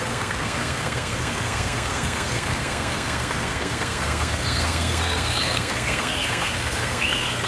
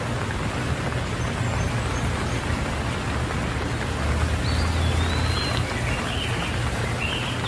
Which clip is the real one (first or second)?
second